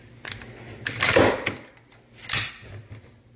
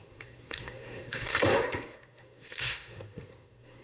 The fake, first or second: second